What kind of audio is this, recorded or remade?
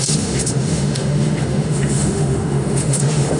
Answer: remade